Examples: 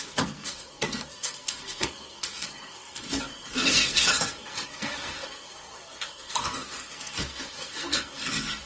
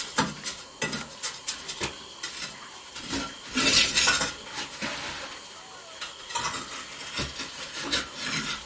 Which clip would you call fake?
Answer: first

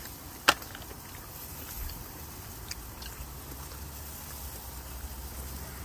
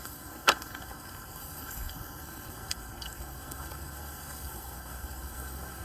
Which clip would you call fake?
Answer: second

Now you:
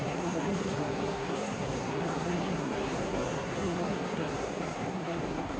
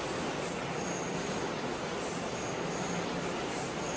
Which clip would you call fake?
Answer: first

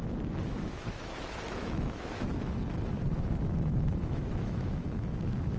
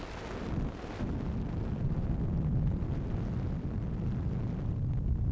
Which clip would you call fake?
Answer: first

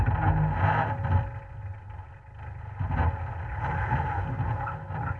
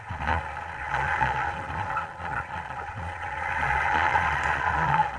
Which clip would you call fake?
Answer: second